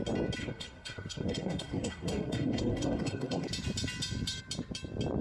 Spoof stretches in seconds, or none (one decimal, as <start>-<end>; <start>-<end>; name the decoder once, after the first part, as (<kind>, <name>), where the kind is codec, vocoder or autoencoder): 0.4-3.5 (codec, SNAC)